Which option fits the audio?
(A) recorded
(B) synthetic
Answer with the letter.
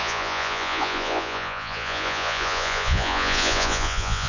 B